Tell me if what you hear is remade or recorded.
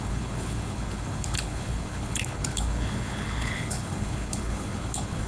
remade